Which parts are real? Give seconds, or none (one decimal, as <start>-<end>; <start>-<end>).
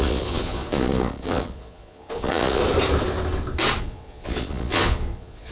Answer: 2.6-3.8